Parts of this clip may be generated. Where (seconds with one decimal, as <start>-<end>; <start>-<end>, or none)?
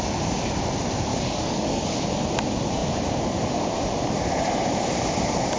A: 1.1-2.0